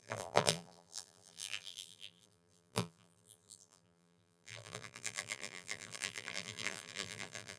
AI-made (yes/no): yes